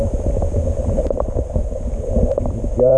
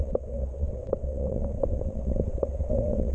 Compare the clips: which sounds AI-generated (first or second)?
second